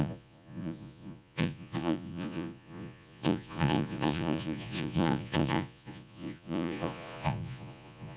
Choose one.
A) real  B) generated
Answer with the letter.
B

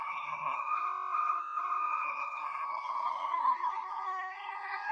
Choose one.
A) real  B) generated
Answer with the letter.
B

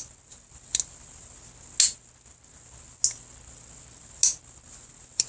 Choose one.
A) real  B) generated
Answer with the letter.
A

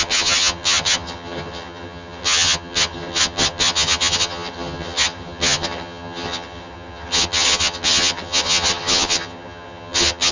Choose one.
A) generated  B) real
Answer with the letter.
A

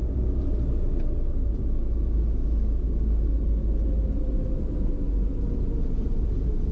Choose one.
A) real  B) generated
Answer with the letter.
A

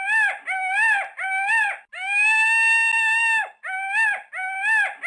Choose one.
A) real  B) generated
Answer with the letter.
A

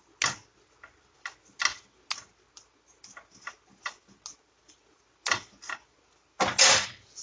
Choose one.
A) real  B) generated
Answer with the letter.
A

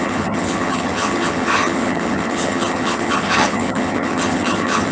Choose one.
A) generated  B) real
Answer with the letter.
A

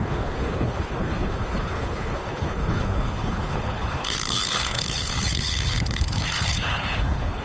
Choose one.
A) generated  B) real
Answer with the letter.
A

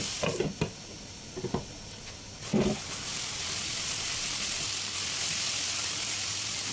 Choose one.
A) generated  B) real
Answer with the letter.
B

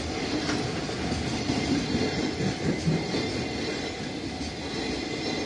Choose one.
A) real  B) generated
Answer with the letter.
A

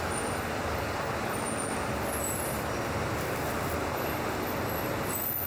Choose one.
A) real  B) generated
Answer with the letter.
A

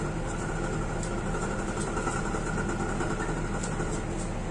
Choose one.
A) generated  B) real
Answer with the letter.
B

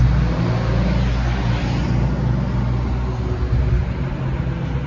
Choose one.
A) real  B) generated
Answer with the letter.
A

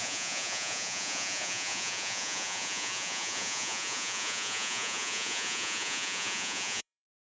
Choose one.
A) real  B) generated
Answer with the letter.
B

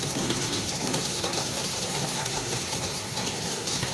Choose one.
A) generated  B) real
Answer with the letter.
A